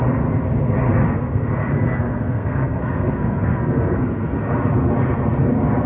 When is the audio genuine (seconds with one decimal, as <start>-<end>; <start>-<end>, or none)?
0.0-0.9; 1.5-2.3; 4.3-5.9